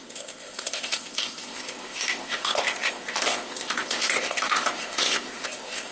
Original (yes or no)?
no